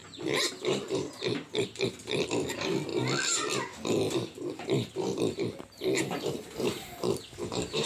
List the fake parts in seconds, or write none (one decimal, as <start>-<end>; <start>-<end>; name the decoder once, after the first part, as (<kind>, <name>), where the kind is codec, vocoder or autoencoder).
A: 0.0-2.9 (vocoder, BigVGAN v2); 4.1-7.9